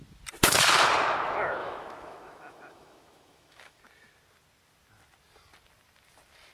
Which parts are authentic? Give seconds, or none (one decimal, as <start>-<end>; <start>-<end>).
0.0-1.6; 3.8-6.5